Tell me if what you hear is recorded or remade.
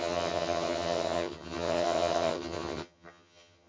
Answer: remade